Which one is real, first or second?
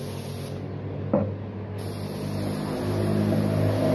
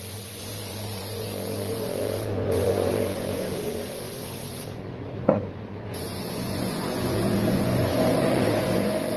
first